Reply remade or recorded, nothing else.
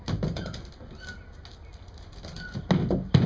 recorded